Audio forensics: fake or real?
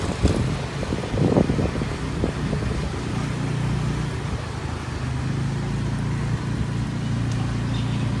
real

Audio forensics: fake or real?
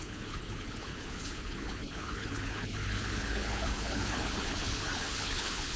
fake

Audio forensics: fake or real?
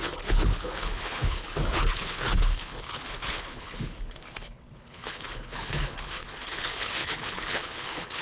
fake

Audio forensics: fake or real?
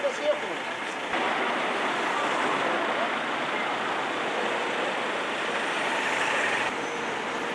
real